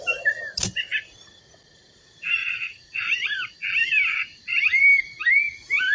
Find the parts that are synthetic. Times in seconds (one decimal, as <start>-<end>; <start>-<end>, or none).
2.4-3.5; 4.5-5.0